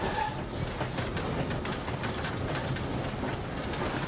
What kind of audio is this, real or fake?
real